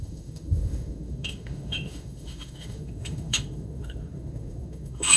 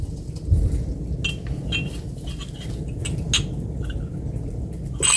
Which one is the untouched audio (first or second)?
second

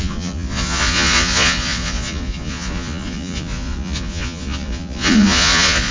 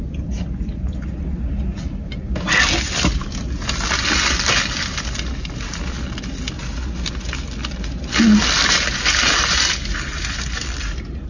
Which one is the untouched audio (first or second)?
second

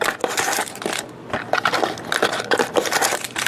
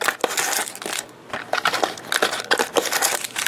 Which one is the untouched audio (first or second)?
second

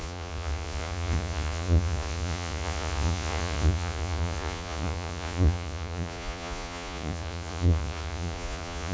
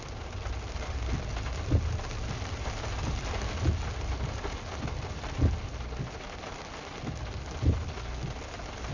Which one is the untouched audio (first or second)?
second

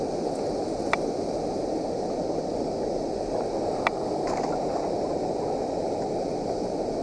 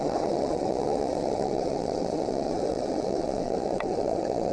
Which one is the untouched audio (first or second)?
first